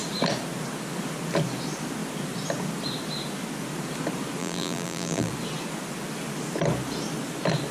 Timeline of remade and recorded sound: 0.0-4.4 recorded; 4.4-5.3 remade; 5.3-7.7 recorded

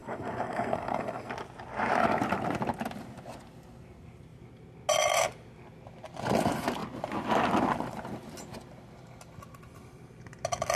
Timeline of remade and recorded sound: 0.0-1.3 remade; 1.3-10.8 recorded

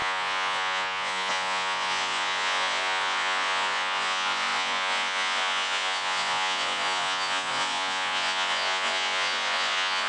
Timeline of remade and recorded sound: 0.0-10.1 remade

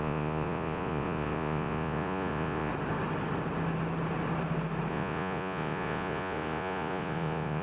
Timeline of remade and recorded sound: 0.0-2.7 remade; 2.7-4.9 recorded; 4.9-7.6 remade

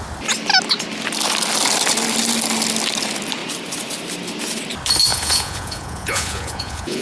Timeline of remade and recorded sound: 0.0-5.1 recorded; 5.1-7.0 remade

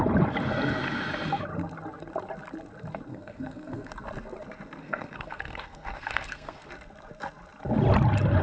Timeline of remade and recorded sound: 0.0-3.1 recorded; 3.1-3.9 remade; 3.9-4.8 recorded; 4.8-6.7 remade; 6.7-8.4 recorded

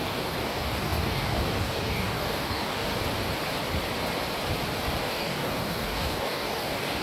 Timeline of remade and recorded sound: 0.0-2.9 remade; 2.9-5.0 recorded; 5.0-7.0 remade

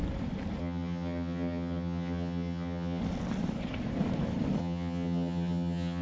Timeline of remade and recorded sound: 0.0-0.6 recorded; 0.6-3.0 remade; 3.0-4.6 recorded; 4.6-6.0 remade